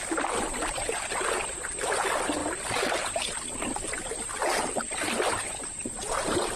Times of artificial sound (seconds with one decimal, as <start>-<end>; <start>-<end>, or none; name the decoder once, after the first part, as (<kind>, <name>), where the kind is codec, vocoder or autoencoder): none